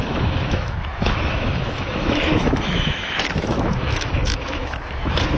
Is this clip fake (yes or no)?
yes